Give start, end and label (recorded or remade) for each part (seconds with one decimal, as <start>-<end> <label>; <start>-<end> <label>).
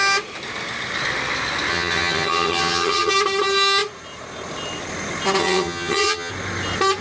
0.0-1.7 recorded; 1.7-3.1 remade; 3.1-5.4 recorded; 5.4-6.3 remade; 6.3-7.0 recorded